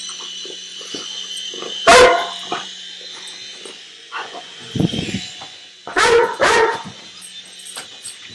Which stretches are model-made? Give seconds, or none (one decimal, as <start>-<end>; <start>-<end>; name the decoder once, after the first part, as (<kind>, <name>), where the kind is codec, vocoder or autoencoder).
0.7-1.5 (vocoder, Vocos); 3.5-7.0